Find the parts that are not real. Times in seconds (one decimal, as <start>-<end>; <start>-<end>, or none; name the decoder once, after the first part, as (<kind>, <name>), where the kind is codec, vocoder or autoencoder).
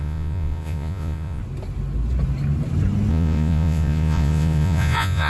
0.0-1.4 (vocoder, Vocos); 3.1-5.3